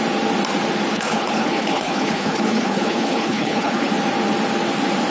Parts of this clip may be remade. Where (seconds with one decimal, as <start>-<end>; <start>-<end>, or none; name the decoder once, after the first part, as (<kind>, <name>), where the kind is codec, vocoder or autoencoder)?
0.9-3.9 (codec, HILCodec)